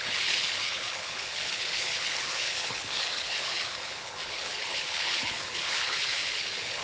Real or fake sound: fake